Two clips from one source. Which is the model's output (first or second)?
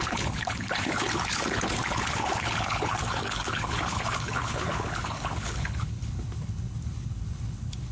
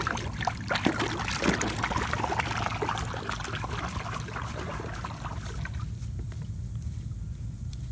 first